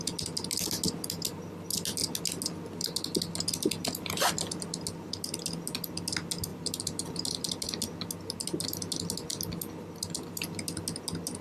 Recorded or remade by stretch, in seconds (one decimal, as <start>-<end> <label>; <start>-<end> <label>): 0.0-6.5 recorded; 6.5-7.1 remade; 7.1-11.4 recorded